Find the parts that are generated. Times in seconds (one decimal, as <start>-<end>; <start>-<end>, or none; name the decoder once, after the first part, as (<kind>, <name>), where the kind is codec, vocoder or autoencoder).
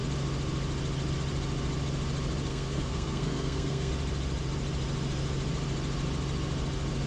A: 2.5-3.9 (codec, SNAC)